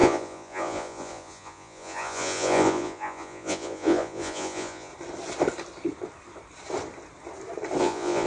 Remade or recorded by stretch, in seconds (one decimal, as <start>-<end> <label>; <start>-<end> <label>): 0.0-4.9 remade; 4.9-7.8 recorded; 7.8-8.3 remade